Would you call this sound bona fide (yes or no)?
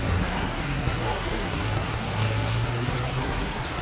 no